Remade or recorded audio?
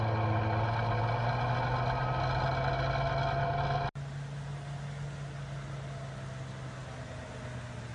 recorded